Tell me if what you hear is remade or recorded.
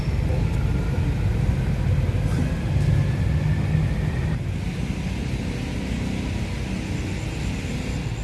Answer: recorded